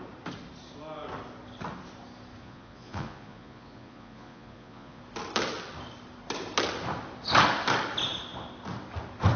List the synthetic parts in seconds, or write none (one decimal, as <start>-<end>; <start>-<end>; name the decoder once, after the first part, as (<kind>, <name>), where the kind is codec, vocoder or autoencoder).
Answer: 2.4-5.0 (vocoder, Vocos)